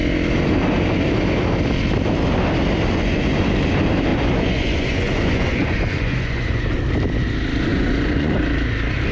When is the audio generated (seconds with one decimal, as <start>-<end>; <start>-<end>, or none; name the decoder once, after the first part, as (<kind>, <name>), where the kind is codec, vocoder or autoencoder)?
2.9-3.4 (vocoder, Vocos); 4.1-6.7; 7.7-8.3